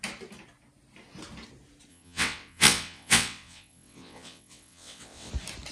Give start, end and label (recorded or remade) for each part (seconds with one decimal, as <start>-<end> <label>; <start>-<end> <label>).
0.0-1.9 recorded; 1.9-5.3 remade; 5.3-5.7 recorded